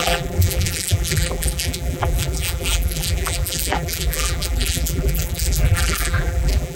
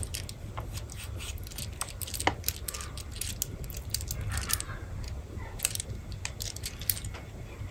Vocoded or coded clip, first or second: first